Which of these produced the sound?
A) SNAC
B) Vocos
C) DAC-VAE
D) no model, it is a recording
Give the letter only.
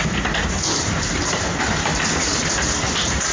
D